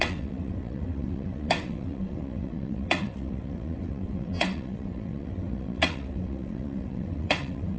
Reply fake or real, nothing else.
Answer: fake